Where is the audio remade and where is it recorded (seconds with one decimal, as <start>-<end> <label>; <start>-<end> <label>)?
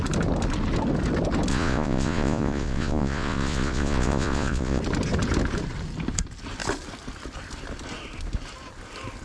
0.0-1.5 recorded; 1.5-4.8 remade; 4.8-9.2 recorded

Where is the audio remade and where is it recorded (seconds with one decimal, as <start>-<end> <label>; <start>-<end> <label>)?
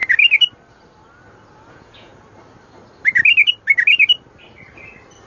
0.0-1.7 recorded; 1.7-2.1 remade; 2.1-5.3 recorded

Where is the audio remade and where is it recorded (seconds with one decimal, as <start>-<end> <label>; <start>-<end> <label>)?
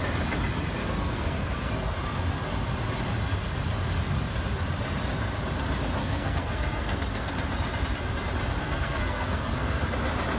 0.0-0.8 recorded; 0.8-1.7 remade; 1.7-6.0 recorded; 6.0-7.3 remade; 7.3-8.6 recorded; 8.6-9.8 remade; 9.8-10.4 recorded